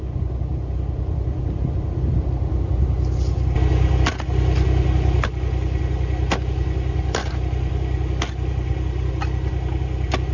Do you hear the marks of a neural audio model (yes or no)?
no